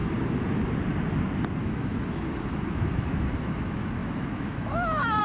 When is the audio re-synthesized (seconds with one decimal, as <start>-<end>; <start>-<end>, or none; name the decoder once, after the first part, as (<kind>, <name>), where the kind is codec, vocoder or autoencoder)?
1.6-5.2 (autoencoder, DAC-VAE)